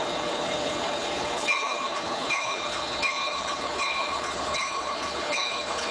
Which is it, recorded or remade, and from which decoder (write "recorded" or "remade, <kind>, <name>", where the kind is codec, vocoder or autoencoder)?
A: remade, codec, HILCodec